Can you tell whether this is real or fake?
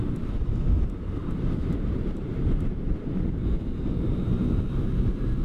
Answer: fake